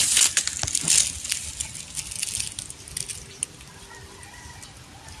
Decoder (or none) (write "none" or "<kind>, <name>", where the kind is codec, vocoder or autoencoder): none